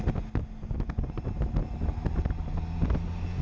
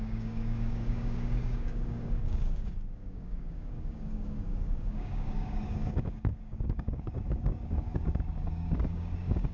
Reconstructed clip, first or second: second